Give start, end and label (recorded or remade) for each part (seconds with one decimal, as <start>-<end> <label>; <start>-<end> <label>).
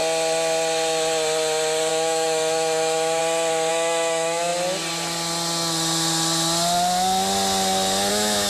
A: 0.0-1.9 recorded; 1.9-3.2 remade; 3.2-3.7 recorded; 3.7-4.5 remade; 4.5-8.1 recorded; 8.1-8.5 remade